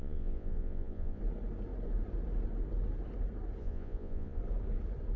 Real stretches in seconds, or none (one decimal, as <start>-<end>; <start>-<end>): 1.2-3.6; 4.4-5.2